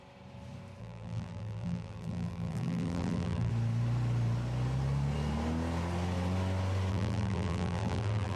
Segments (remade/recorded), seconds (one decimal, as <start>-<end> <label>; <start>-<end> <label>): 0.0-0.8 recorded; 0.8-3.5 remade; 3.5-6.9 recorded; 6.9-8.4 remade